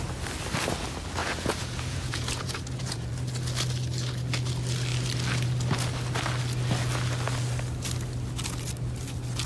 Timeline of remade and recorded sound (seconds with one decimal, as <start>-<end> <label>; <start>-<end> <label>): 0.0-1.2 recorded; 1.2-3.1 remade; 3.1-9.5 recorded